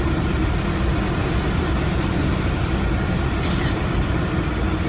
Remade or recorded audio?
recorded